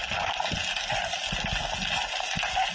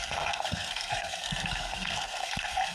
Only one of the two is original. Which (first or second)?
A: first